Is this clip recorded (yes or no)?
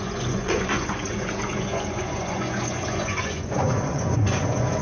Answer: no